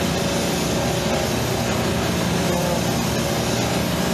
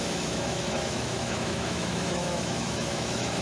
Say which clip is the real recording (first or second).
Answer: first